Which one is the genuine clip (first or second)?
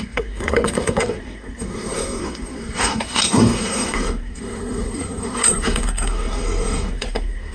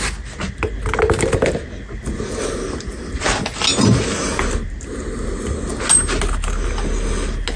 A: second